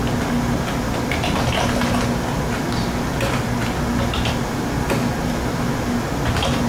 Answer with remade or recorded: recorded